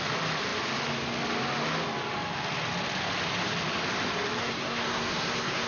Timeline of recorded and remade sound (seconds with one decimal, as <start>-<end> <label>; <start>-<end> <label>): 0.0-4.4 recorded; 4.4-5.7 remade